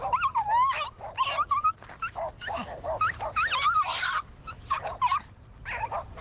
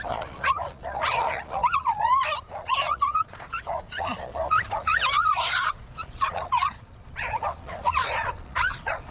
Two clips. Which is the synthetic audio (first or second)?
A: second